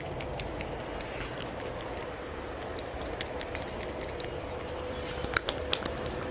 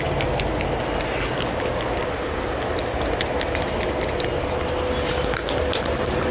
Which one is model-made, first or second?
first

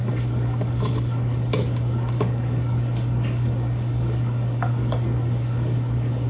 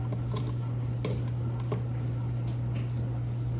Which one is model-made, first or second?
first